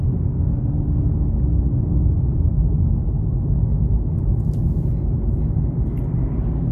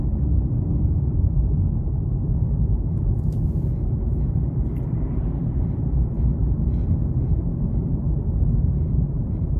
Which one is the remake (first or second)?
second